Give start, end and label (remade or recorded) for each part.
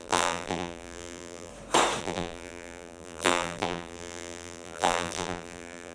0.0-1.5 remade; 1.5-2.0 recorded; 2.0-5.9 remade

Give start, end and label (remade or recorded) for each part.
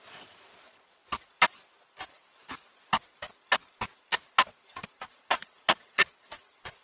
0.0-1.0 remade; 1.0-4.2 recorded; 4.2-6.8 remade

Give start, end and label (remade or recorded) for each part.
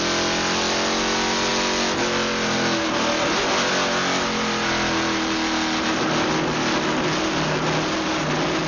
0.0-8.7 recorded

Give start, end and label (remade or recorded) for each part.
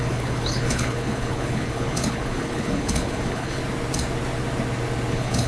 0.0-3.6 remade; 3.6-5.1 recorded; 5.1-5.5 remade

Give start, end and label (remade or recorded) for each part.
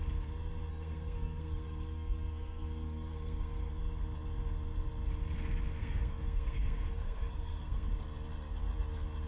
0.0-0.7 recorded; 0.7-3.7 remade; 3.7-5.8 recorded; 5.8-7.9 remade; 7.9-9.3 recorded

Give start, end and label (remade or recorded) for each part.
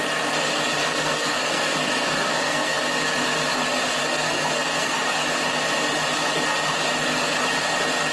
0.0-0.8 recorded; 0.8-2.9 remade; 2.9-4.0 recorded; 4.0-5.0 remade; 5.0-8.1 recorded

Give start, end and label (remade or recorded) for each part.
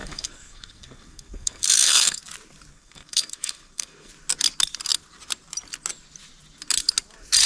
0.0-2.2 remade; 2.2-2.7 recorded; 2.7-4.1 remade; 4.1-7.5 recorded